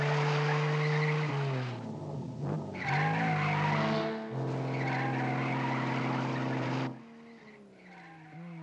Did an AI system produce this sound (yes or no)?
no